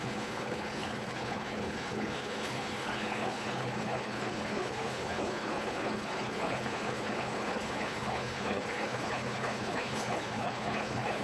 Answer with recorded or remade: remade